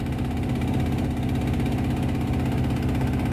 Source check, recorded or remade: recorded